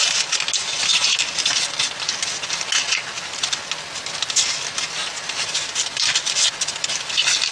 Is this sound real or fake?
real